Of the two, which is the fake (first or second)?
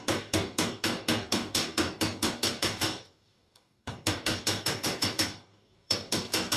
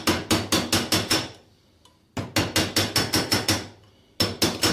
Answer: first